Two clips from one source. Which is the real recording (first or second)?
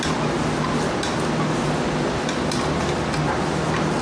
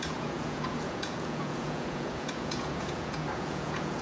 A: first